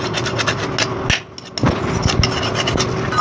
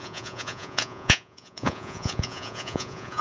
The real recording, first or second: first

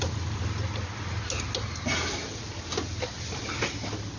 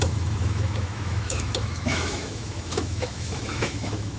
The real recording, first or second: first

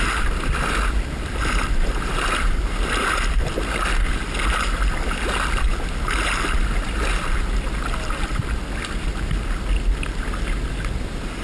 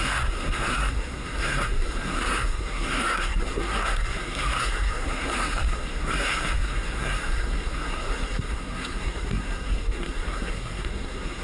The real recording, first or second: first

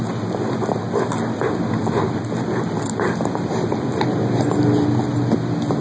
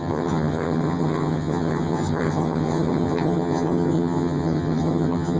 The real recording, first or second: first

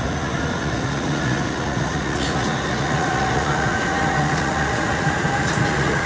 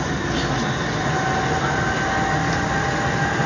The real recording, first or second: second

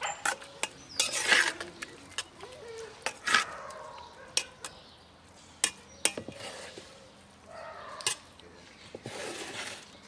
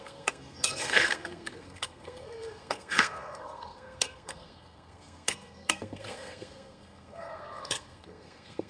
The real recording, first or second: first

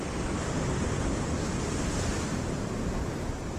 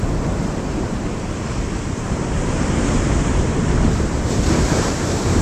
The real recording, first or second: first